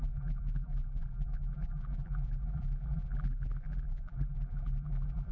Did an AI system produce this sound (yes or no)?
yes